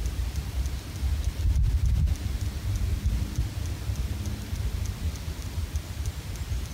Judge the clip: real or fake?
real